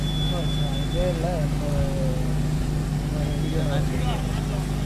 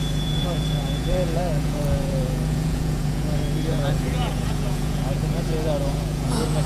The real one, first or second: first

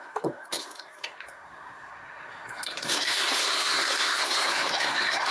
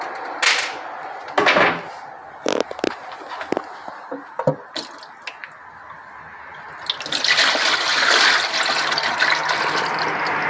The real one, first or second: second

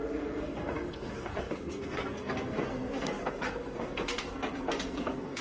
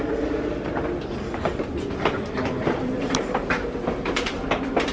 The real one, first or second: second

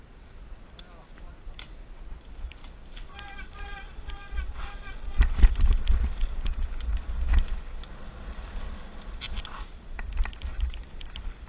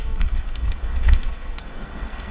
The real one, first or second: first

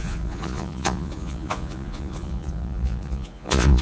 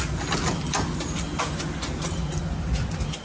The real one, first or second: second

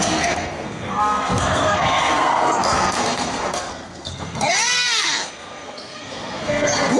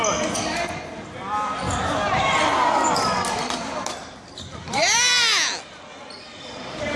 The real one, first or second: second